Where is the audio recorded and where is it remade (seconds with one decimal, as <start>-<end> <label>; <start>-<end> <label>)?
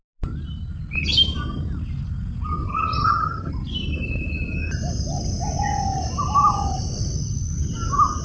0.0-2.7 recorded; 2.7-3.5 remade; 3.5-8.2 recorded